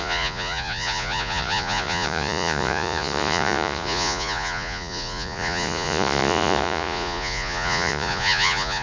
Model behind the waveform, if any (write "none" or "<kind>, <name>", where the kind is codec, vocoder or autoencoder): vocoder, Vocos